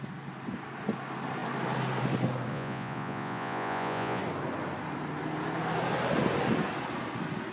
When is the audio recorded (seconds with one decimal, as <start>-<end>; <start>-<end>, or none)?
0.0-2.5; 4.2-7.5